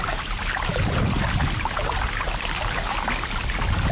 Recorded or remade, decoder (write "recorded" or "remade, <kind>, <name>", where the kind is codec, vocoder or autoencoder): recorded